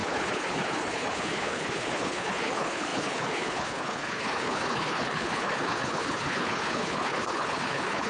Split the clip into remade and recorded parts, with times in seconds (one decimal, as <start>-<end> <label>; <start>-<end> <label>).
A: 0.0-8.1 remade